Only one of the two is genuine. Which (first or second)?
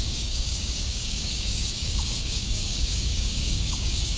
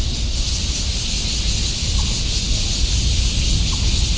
second